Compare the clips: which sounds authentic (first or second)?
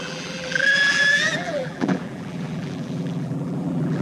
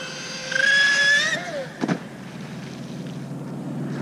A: second